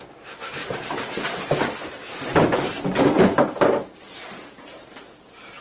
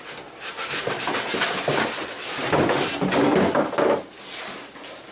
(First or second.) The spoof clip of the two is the first